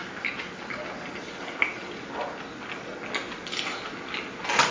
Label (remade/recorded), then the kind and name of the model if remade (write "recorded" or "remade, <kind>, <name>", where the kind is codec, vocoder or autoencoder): recorded